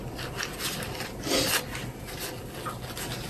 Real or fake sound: real